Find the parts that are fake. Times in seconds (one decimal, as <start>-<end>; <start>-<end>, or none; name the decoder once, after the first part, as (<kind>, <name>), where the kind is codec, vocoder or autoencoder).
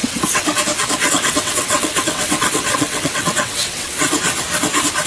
0.0-0.6 (vocoder, WaveNeXt); 1.0-4.1